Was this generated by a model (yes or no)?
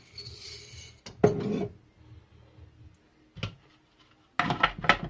no